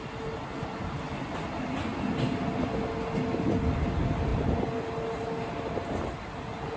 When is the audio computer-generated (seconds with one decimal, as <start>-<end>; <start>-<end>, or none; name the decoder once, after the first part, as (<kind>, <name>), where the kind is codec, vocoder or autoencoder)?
none